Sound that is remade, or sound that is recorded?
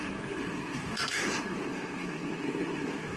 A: remade